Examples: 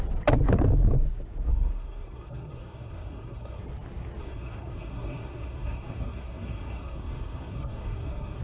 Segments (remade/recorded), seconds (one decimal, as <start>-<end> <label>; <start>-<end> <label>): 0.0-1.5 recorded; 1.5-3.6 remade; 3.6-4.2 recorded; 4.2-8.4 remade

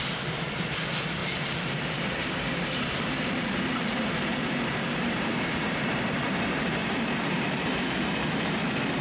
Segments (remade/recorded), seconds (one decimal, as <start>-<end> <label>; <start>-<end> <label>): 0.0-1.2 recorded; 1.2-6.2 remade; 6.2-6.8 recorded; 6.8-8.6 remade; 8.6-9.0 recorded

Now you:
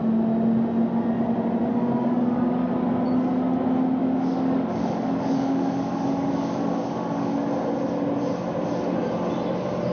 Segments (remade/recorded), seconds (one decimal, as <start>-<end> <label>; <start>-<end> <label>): 0.0-1.7 recorded; 1.7-2.7 remade; 2.7-4.0 recorded; 4.0-7.3 remade; 7.3-9.9 recorded